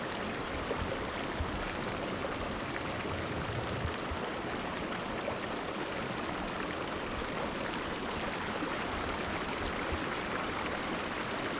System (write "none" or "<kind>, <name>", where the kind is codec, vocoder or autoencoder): none